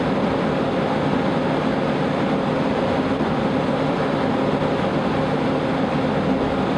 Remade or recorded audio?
recorded